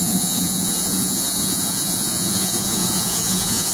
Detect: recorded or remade remade